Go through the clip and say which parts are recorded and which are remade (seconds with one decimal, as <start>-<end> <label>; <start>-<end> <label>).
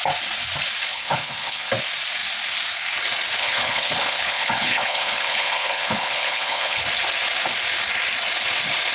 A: 0.0-0.9 recorded; 0.9-1.7 remade; 1.7-3.4 recorded; 3.4-6.8 remade; 6.8-8.9 recorded